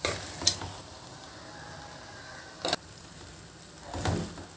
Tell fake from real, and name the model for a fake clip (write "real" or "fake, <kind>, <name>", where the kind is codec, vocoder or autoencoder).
real